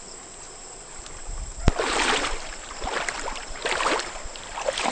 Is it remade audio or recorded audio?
remade